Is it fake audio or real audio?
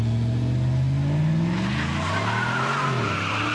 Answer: real